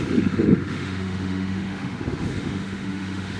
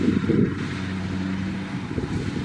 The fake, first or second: first